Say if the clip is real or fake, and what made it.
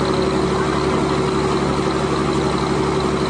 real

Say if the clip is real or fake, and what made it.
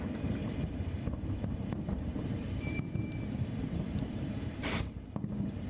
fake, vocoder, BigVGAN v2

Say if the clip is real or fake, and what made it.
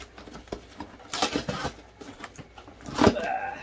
real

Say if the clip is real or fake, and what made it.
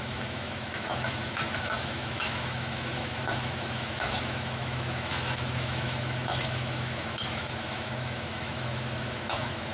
fake, autoencoder, DAC-VAE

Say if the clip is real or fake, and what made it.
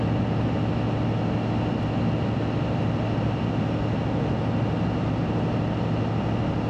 real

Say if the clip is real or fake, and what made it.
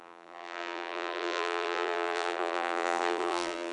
fake, vocoder, BigVGAN v2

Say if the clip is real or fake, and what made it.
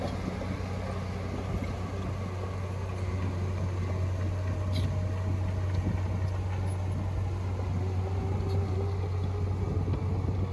real